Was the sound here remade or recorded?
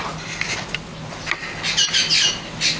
recorded